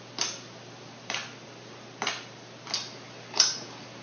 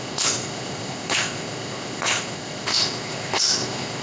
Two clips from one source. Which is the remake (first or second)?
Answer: second